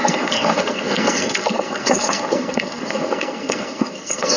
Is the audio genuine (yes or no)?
no